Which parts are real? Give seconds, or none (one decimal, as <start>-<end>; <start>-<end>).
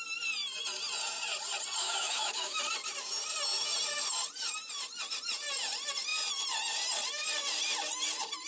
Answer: 0.0-1.8; 2.6-8.5